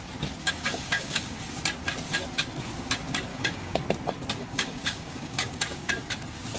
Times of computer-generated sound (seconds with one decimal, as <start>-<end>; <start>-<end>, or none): 0.4-1.4; 3.3-3.8; 4.4-5.9